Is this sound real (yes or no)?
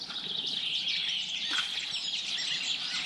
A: yes